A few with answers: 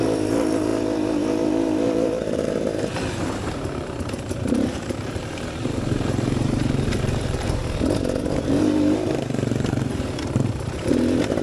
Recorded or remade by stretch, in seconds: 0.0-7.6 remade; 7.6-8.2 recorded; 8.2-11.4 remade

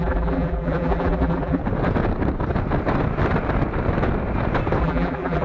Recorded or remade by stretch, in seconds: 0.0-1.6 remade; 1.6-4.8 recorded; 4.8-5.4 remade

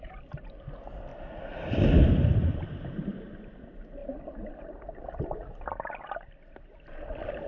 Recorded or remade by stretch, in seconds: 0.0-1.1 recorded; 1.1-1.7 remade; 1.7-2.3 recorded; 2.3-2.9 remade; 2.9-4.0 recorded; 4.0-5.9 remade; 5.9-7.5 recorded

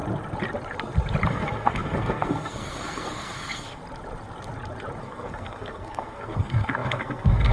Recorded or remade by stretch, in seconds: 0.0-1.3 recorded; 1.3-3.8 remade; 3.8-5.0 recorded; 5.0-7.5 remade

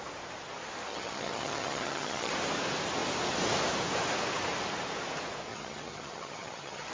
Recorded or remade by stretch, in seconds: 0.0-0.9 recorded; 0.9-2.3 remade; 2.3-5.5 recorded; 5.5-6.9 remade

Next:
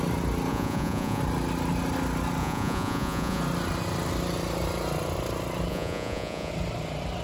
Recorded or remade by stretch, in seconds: 0.0-0.5 recorded; 0.5-1.2 remade; 1.2-2.4 recorded; 2.4-3.4 remade; 3.4-5.7 recorded; 5.7-6.5 remade; 6.5-7.2 recorded